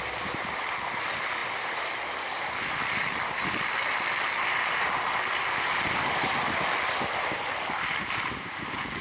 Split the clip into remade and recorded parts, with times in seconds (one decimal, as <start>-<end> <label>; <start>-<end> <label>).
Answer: 0.0-9.0 recorded